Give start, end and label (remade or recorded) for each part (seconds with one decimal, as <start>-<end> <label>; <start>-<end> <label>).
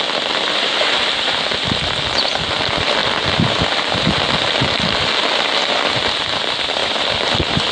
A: 0.0-7.7 recorded